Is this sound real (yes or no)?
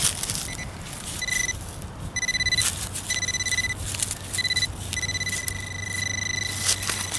yes